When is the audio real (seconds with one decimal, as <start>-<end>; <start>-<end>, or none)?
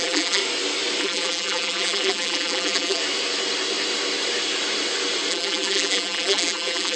0.4-1.0; 3.0-5.3